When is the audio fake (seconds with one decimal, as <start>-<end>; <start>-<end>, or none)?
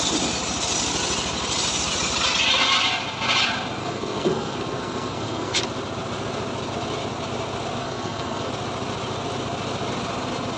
3.8-5.6; 7.8-8.5